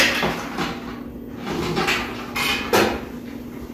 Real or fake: real